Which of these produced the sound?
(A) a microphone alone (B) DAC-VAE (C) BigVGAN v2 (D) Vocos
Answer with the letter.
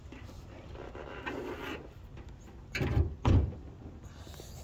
A